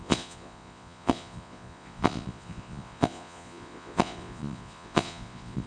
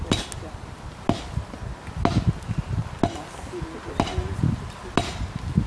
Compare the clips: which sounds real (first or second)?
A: second